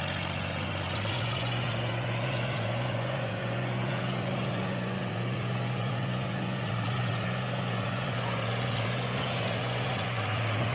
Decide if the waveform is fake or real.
fake